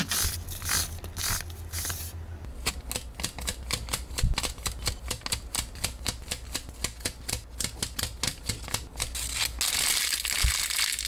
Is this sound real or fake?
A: real